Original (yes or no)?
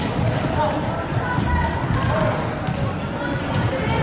yes